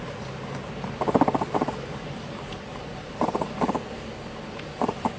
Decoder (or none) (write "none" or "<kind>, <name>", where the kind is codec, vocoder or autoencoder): none